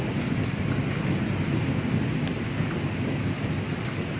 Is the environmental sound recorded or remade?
recorded